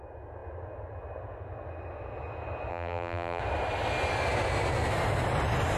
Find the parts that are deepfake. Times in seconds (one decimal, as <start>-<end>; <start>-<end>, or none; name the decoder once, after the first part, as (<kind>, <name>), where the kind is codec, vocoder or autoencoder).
2.7-3.4 (vocoder, BigVGAN v2)